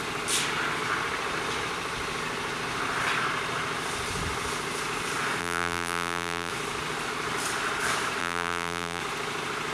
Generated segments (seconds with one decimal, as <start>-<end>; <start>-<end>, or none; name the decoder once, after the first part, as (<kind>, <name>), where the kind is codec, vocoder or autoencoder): 5.4-6.5 (vocoder, BigVGAN v2); 8.2-9.0